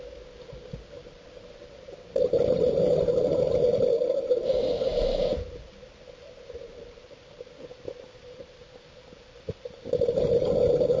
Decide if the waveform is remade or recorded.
recorded